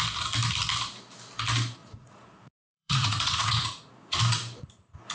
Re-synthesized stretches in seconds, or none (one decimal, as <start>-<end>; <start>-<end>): 1.8-4.2